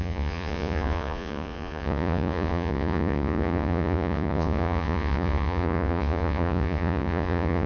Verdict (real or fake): fake